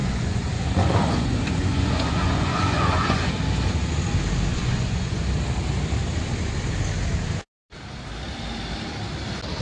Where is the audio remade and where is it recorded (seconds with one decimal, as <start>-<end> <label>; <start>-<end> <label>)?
0.0-3.3 remade; 3.3-4.5 recorded; 4.5-5.2 remade; 5.2-9.6 recorded